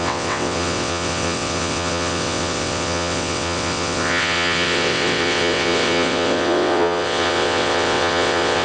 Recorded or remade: remade